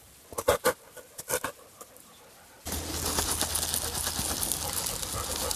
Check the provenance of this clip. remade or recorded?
recorded